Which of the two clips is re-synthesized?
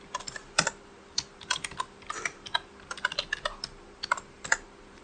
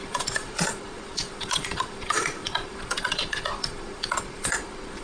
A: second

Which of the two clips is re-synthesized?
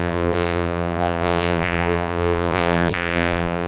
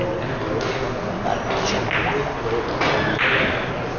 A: first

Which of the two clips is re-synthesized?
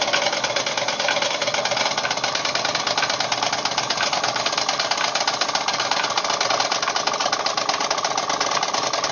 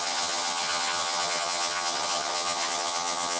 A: second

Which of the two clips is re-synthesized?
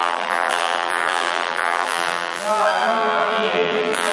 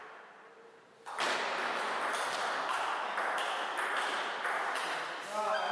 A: first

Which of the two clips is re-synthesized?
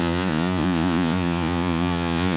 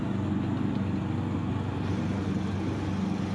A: first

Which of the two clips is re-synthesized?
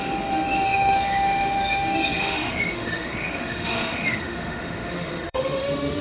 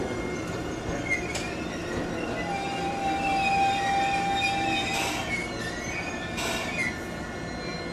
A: first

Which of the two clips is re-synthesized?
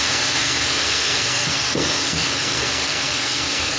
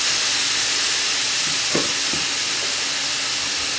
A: first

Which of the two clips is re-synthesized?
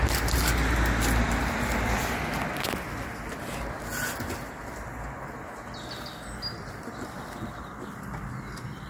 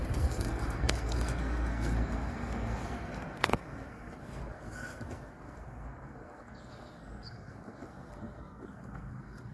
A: second